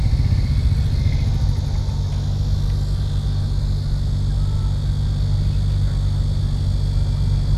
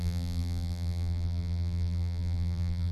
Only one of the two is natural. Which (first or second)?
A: first